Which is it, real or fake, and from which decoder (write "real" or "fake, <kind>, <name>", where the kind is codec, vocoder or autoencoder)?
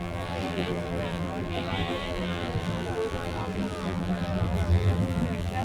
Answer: fake, vocoder, BigVGAN v2